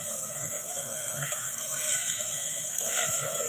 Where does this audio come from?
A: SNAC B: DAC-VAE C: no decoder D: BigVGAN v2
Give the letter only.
A